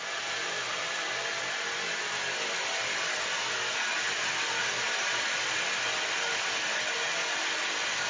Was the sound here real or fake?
real